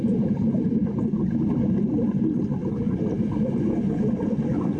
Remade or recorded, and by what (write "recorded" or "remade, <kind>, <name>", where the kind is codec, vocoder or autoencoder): recorded